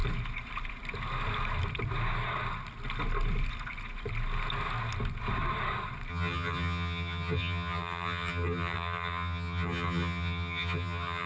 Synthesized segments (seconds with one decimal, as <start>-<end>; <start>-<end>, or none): 6.1-11.3